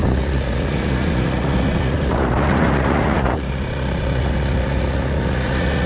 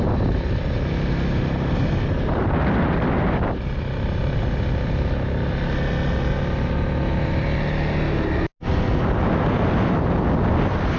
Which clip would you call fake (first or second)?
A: first